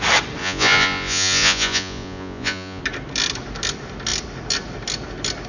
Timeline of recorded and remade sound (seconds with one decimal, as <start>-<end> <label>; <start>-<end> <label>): 0.0-0.4 recorded; 0.4-2.8 remade; 2.8-5.5 recorded